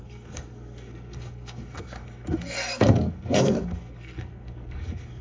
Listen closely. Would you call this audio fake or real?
fake